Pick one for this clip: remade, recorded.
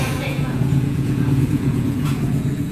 remade